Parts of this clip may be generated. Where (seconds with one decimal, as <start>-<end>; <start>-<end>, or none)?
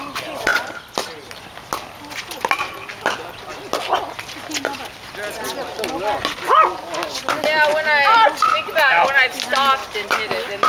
none